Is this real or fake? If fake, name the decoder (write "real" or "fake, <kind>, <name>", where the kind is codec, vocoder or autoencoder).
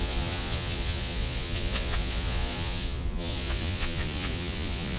fake, vocoder, Vocos